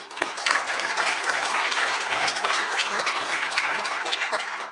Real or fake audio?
fake